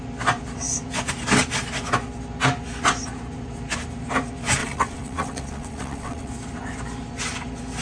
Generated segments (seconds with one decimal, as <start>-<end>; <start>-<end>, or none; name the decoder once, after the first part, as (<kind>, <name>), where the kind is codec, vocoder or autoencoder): 4.6-6.3 (vocoder, WaveNeXt)